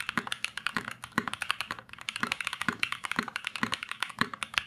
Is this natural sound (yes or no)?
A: no